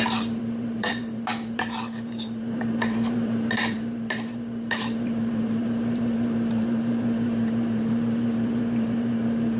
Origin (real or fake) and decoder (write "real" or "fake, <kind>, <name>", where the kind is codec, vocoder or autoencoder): fake, vocoder, BigVGAN v2